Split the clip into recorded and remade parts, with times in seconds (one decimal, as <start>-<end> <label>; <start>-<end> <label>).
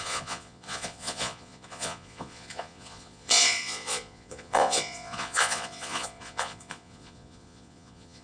0.0-8.2 remade